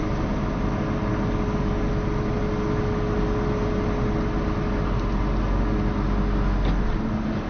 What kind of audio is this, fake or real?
real